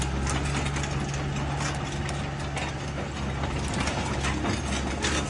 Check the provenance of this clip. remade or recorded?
recorded